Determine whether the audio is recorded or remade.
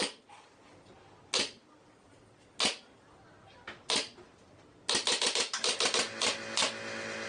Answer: recorded